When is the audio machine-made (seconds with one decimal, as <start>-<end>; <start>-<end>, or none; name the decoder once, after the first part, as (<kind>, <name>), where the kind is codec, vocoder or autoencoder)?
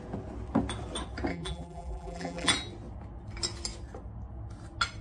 1.3-2.5 (vocoder, BigVGAN v2)